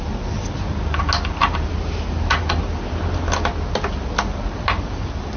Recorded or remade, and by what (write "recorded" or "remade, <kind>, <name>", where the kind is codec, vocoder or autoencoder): recorded